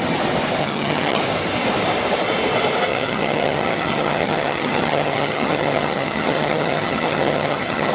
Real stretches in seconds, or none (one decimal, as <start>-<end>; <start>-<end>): 0.0-0.6; 1.2-2.9